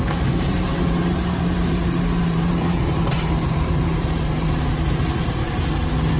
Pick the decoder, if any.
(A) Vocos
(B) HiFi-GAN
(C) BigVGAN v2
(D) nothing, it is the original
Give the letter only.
C